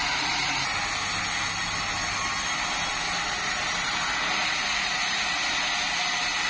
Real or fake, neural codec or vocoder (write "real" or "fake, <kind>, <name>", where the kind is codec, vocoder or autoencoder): real